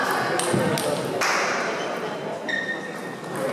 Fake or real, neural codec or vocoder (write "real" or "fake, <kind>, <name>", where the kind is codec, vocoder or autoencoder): real